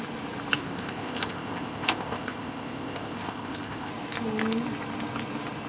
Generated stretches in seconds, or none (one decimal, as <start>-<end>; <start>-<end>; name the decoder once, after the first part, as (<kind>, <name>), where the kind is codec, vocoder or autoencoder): 0.6-3.9 (codec, ZipCodec)